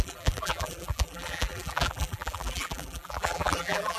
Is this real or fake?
fake